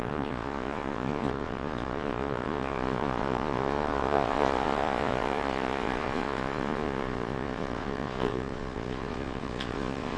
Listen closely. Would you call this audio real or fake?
fake